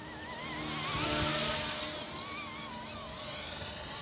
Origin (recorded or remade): recorded